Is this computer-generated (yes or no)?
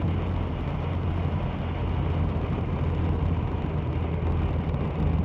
no